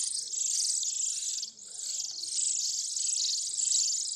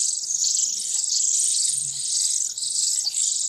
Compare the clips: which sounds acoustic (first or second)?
first